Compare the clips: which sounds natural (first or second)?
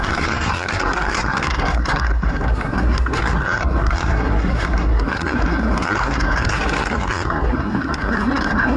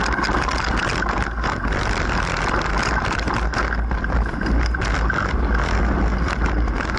second